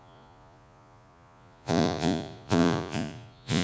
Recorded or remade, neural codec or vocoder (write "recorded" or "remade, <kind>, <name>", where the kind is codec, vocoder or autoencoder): remade, vocoder, Vocos